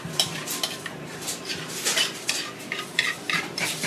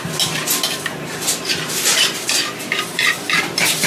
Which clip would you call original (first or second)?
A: second